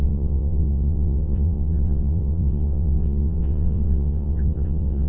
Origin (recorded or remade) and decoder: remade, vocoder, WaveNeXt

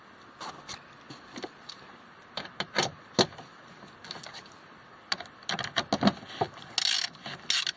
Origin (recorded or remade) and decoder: recorded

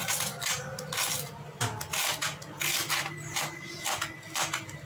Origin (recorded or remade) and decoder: recorded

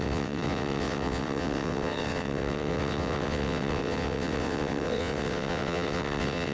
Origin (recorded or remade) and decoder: remade, vocoder, WaveNeXt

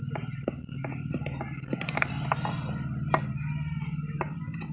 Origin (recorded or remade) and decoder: recorded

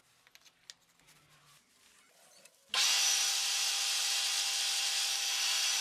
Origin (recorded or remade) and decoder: recorded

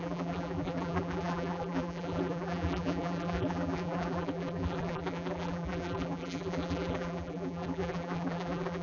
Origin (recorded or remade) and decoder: remade, vocoder, BigVGAN v2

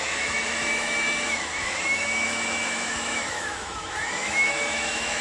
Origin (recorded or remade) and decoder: remade, autoencoder, DAC-VAE